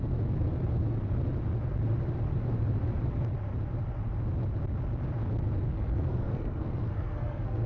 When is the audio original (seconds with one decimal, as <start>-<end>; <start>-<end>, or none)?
0.0-5.7